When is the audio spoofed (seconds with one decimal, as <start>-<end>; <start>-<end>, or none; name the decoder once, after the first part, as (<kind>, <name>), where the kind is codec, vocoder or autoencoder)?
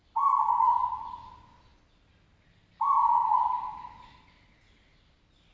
none